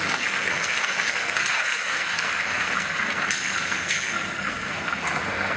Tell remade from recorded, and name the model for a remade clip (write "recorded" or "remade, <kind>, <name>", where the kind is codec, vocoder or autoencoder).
remade, codec, SNAC